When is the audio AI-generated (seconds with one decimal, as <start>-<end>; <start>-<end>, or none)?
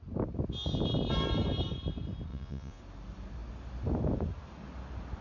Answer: 2.3-2.8